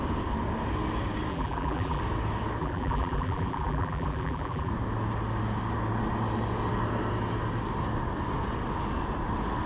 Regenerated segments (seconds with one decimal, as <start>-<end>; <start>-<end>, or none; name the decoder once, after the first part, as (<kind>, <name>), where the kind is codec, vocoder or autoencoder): 1.3-2.0 (vocoder, BigVGAN v2); 2.6-4.7